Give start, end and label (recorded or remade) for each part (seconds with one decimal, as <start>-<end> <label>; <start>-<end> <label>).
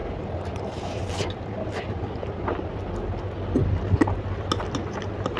0.0-5.4 recorded